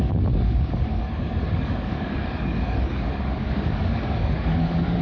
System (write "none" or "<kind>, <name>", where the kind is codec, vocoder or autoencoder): codec, DAC